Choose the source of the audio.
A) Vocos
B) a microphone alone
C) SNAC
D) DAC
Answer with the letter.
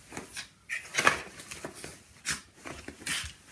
B